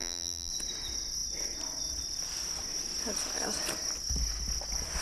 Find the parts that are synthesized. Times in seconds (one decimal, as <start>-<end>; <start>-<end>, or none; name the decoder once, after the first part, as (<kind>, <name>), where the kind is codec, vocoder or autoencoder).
0.0-0.5 (vocoder, BigVGAN v2)